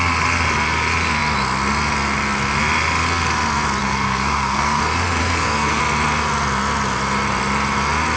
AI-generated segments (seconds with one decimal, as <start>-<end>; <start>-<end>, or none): 3.8-4.8; 5.2-5.8